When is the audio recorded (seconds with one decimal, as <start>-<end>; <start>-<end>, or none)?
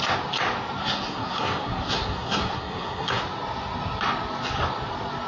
0.0-0.8; 3.2-5.3